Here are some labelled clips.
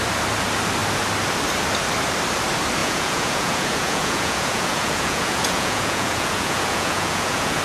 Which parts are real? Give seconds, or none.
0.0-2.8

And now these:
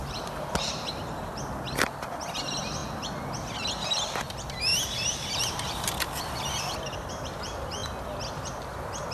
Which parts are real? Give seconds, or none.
0.0-4.7; 7.1-9.1

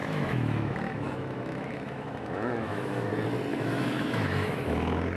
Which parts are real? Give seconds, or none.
3.1-3.5

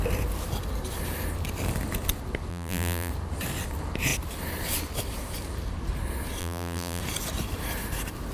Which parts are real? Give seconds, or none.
0.0-2.5; 3.1-6.4; 7.0-8.3

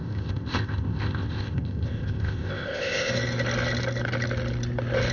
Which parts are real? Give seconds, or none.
3.1-5.1

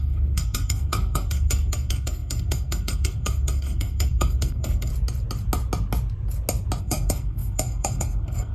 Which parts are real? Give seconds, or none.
4.9-6.8

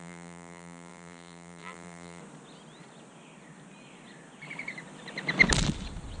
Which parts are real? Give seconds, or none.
2.2-6.2